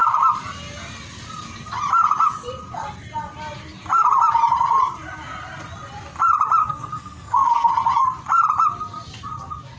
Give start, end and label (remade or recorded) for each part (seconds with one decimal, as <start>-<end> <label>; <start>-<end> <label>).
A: 0.0-6.6 recorded; 6.6-7.7 remade; 7.7-9.8 recorded